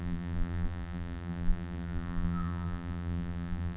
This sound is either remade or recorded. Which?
remade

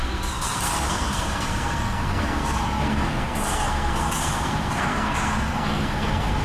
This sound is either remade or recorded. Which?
remade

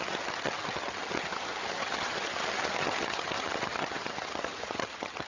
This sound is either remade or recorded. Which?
remade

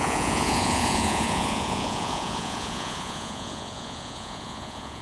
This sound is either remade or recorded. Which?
remade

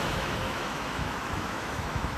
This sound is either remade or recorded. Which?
remade